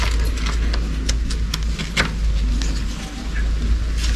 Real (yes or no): yes